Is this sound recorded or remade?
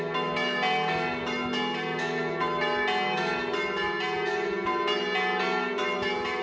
recorded